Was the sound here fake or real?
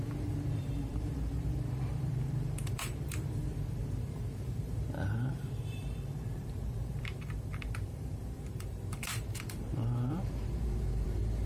fake